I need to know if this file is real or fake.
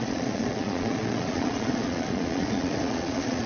fake